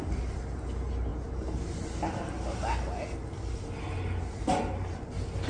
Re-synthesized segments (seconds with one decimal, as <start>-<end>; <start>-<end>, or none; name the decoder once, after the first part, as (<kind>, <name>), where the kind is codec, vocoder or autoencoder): none